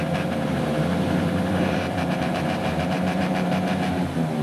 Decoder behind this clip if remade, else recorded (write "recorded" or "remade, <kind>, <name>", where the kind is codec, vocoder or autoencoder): remade, vocoder, BigVGAN v2